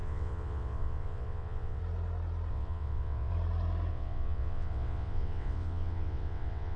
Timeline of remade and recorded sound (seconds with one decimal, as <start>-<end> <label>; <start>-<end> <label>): 0.0-1.8 remade; 1.8-2.5 recorded; 2.5-3.3 remade; 3.3-3.9 recorded; 3.9-6.8 remade